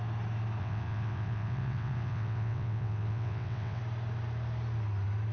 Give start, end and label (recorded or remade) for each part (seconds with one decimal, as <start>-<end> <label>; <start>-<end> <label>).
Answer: 0.0-0.6 recorded; 0.6-3.8 remade; 3.8-5.3 recorded